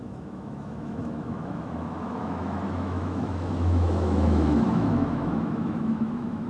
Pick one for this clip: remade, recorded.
remade